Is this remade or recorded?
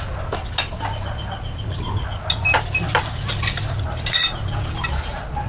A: recorded